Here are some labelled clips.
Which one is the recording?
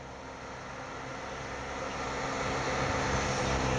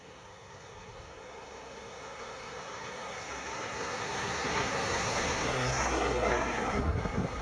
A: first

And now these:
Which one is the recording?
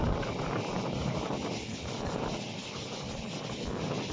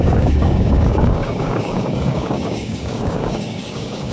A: first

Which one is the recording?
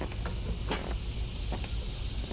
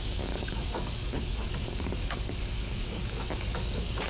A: first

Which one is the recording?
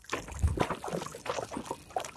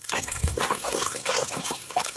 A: first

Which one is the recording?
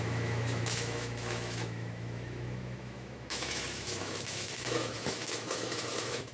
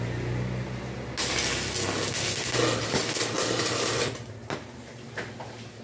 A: second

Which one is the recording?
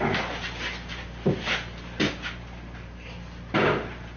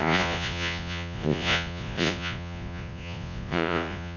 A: first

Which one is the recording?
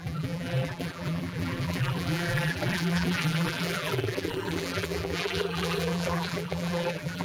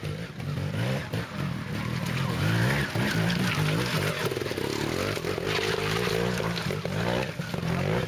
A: second